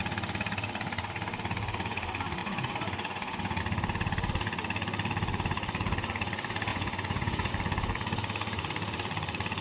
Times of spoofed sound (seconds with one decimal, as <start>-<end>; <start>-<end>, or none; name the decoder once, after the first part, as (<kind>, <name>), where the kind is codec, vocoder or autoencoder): 2.4-3.6 (vocoder, Vocos); 6.7-7.5